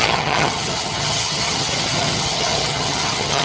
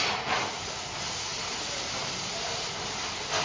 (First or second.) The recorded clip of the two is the second